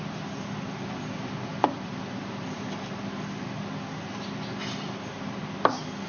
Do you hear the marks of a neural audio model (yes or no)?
no